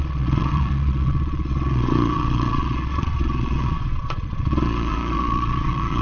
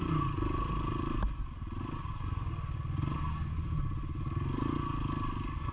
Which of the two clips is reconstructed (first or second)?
first